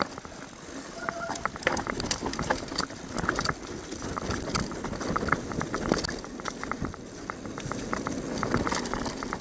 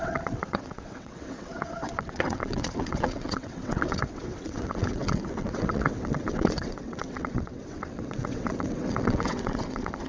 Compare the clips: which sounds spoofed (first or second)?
second